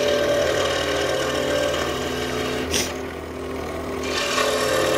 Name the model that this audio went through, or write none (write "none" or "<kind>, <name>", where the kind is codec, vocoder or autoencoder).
none